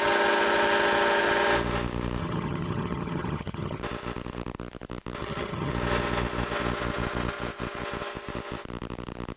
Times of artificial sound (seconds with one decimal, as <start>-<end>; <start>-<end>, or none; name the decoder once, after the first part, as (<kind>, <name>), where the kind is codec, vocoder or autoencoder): 2.2-3.8 (vocoder, HiFi-GAN); 5.2-5.7